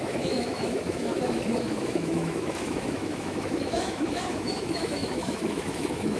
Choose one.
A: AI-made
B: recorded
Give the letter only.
A